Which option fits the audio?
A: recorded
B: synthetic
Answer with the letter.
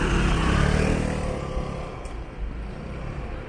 A